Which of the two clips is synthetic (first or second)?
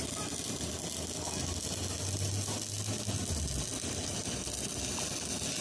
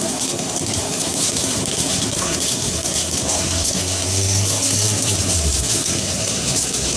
second